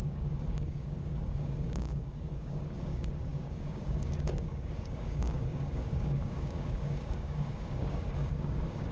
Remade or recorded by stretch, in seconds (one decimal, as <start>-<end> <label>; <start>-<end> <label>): 0.0-8.9 remade